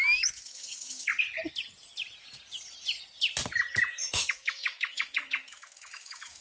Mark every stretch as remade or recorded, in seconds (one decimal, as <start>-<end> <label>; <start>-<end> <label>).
0.0-1.1 remade; 1.1-3.9 recorded; 3.9-6.4 remade